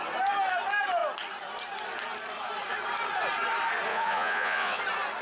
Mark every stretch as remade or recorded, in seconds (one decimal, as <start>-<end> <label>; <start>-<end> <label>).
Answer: 0.0-3.9 recorded; 3.9-4.8 remade; 4.8-5.2 recorded